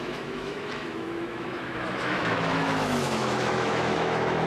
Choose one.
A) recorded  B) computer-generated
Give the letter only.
B